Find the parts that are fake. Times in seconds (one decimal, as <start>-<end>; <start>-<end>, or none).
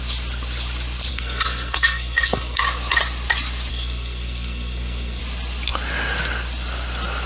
1.1-2.6; 3.7-5.2